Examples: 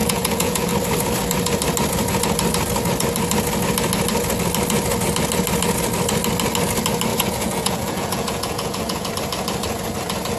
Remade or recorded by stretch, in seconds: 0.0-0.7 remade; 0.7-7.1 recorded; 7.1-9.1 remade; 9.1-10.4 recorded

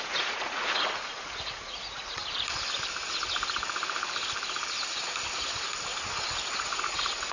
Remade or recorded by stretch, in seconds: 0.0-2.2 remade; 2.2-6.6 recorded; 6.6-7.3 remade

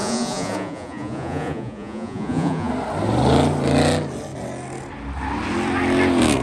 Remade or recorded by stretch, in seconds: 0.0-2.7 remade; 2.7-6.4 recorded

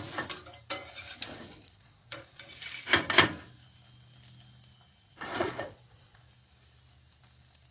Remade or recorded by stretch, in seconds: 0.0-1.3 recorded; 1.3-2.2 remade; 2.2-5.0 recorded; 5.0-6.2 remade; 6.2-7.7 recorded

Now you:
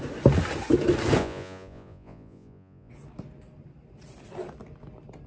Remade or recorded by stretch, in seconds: 0.0-1.2 recorded; 1.2-2.9 remade; 2.9-5.3 recorded